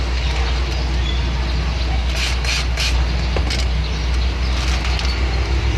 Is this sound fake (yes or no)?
no